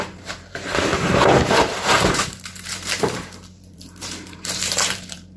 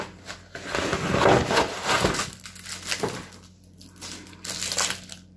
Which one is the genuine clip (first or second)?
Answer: second